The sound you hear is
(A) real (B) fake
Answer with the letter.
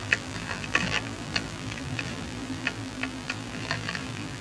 B